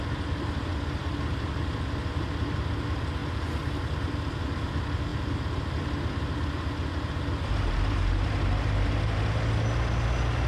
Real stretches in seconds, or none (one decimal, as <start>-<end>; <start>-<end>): 0.0-10.5

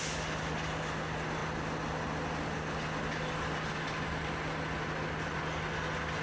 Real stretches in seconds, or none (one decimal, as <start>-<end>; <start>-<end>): 0.0-6.2

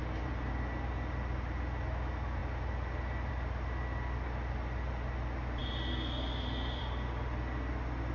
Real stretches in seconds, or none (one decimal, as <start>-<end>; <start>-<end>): 0.5-8.1

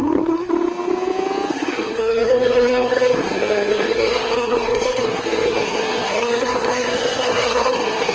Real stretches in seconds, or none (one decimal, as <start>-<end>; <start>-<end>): 0.5-1.5

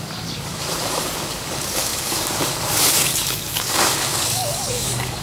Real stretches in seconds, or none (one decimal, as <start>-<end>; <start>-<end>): none

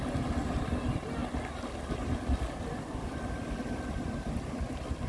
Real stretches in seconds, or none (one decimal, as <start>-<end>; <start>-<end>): 0.0-5.1

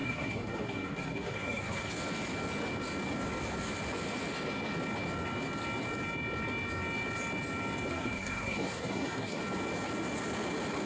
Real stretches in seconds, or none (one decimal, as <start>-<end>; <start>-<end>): 1.9-7.9; 9.4-10.9